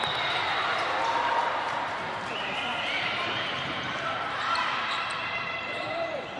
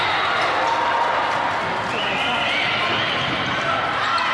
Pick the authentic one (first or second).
second